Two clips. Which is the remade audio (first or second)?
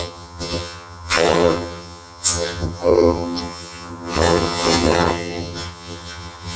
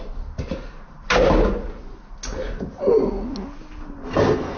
first